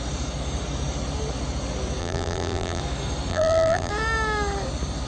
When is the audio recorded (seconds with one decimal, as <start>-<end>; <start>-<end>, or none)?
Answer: 0.0-2.0; 2.8-3.3; 3.9-5.1